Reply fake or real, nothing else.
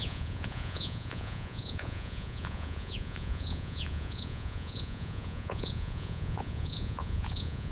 fake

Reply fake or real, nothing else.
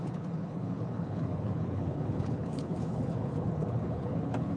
fake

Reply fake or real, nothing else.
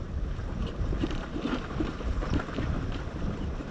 fake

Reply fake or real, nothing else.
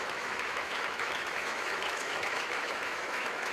fake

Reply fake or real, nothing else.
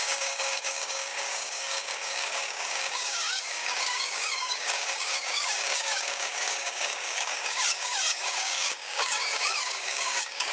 fake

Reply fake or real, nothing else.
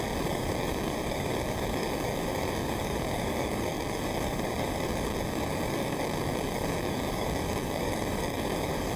fake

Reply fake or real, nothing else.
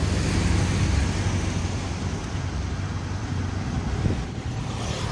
real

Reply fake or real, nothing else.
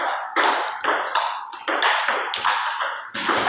real